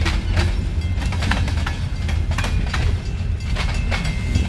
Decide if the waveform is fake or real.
real